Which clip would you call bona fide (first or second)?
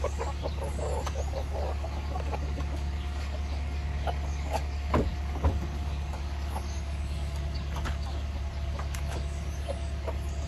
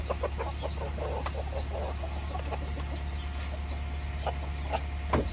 second